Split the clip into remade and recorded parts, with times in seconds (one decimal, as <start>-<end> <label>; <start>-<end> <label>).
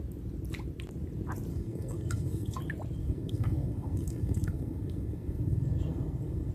0.0-1.5 recorded; 1.5-2.6 remade; 2.6-3.0 recorded; 3.0-6.5 remade